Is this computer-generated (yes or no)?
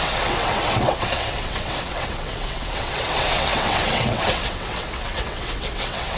yes